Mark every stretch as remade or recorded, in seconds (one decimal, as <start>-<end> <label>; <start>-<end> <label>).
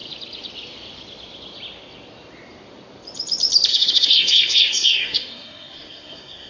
0.0-3.7 recorded; 3.7-6.5 remade